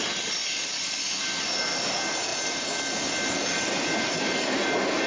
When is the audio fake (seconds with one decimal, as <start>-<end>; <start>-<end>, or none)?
none